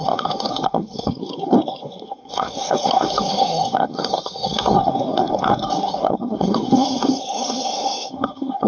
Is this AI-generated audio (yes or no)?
yes